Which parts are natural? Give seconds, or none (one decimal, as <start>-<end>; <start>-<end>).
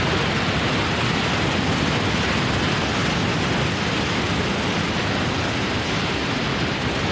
0.0-7.1